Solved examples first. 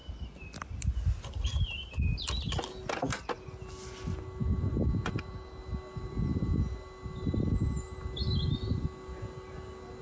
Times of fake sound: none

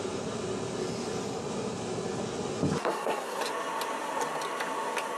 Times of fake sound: 2.8-3.4 (codec, SNAC)

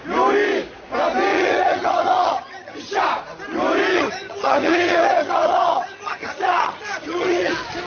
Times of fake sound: 1.3-3.0 (vocoder, HiFi-GAN); 3.9-7.5